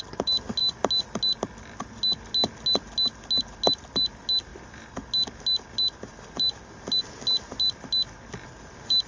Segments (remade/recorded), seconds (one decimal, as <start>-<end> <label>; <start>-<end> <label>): 0.0-9.1 recorded